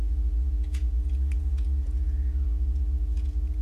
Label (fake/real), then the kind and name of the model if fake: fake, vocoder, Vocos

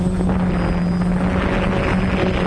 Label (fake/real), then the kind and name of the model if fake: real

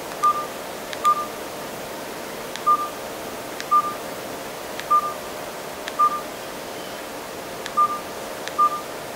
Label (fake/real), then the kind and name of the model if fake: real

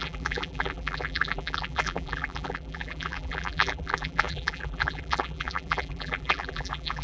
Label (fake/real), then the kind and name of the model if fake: fake, vocoder, BigVGAN v2